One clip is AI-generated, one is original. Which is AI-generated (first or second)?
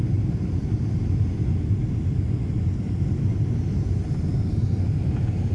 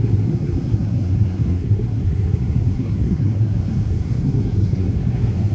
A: second